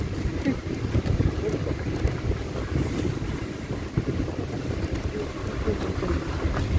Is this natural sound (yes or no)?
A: yes